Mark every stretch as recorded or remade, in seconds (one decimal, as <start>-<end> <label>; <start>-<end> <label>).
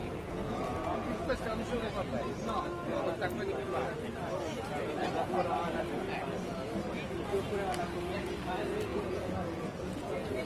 0.0-1.9 remade; 1.9-5.0 recorded; 5.0-5.5 remade; 5.5-8.9 recorded; 8.9-10.4 remade